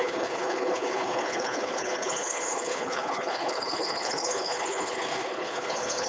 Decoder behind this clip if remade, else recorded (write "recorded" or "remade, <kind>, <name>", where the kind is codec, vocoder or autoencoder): remade, codec, HILCodec